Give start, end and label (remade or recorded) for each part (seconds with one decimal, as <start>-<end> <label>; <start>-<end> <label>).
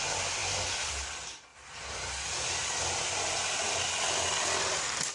0.0-5.1 recorded